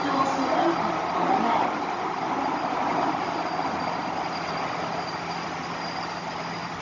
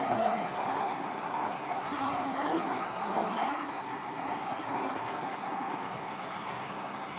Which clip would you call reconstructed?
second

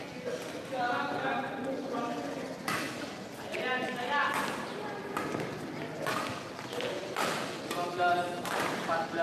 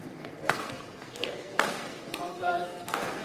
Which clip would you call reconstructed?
second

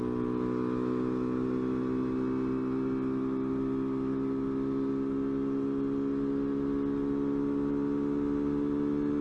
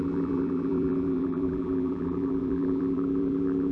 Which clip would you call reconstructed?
second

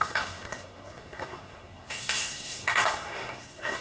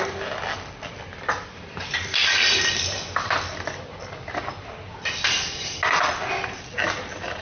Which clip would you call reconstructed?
first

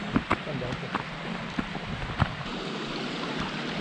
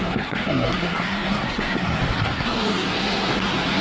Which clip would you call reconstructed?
second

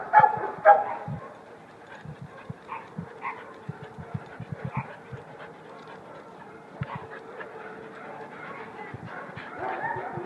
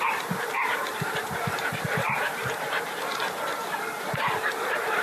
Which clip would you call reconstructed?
second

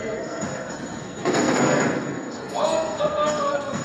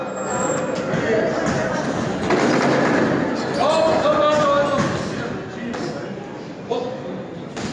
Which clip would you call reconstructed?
first